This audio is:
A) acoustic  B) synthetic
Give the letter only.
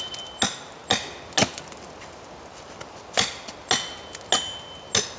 A